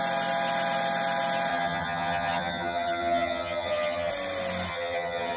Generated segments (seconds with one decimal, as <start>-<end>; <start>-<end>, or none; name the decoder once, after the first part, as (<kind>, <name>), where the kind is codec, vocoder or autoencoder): 1.5-4.1 (vocoder, HiFi-GAN); 4.7-5.4